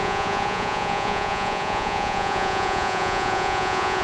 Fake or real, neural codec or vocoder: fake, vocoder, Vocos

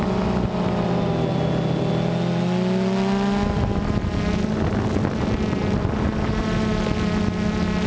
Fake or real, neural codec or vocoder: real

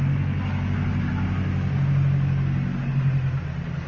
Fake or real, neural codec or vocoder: real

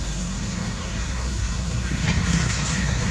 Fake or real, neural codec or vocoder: fake, codec, SNAC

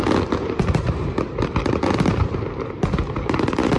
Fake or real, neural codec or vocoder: real